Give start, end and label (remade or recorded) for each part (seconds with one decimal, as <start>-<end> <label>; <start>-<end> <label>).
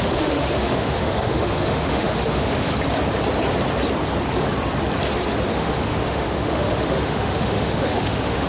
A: 0.0-2.7 remade; 2.7-5.5 recorded; 5.5-8.5 remade